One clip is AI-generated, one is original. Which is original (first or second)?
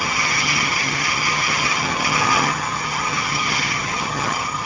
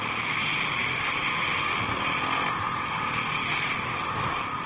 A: second